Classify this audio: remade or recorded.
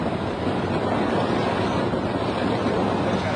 recorded